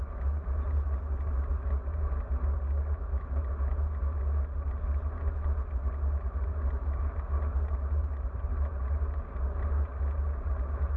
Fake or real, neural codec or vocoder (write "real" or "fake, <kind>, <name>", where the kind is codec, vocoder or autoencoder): real